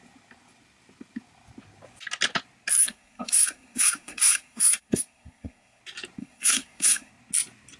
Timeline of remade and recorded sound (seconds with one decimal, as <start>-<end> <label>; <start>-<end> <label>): 0.0-2.8 recorded; 2.8-5.8 remade; 5.8-6.2 recorded; 6.2-7.1 remade; 7.1-7.8 recorded